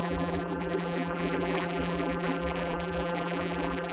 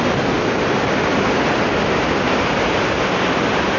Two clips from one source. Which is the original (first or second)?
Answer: second